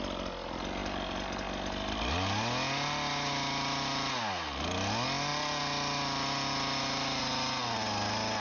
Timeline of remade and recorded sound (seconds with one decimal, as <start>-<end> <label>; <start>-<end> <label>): 0.0-8.4 recorded